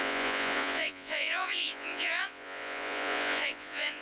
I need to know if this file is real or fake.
fake